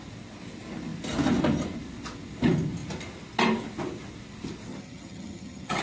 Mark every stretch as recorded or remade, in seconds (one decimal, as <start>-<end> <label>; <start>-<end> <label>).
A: 0.0-4.7 recorded; 4.7-5.8 remade